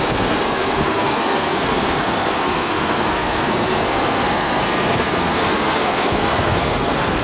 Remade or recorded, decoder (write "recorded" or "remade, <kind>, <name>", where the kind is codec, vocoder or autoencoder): remade, codec, SNAC